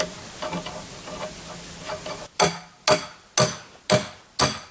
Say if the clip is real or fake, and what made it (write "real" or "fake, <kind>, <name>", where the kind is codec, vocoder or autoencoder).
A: real